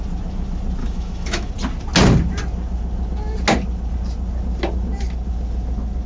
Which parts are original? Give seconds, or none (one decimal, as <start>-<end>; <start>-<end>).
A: 0.0-0.8; 1.5-6.1